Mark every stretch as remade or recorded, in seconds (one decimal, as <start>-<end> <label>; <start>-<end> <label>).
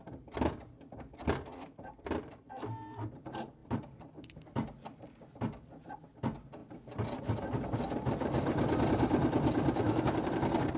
0.0-10.8 recorded